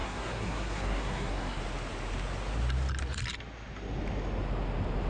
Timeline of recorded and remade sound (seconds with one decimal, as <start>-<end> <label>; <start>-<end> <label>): 0.0-1.6 remade; 1.6-5.1 recorded